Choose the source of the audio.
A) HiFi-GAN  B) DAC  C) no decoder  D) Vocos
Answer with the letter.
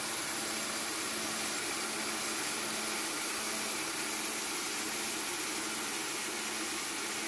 C